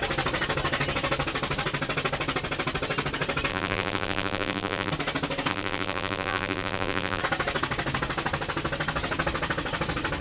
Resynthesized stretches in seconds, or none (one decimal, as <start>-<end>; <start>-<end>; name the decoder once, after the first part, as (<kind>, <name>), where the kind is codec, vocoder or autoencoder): 3.5-4.9 (vocoder, BigVGAN v2); 5.5-7.2